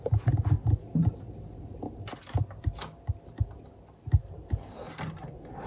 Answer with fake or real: real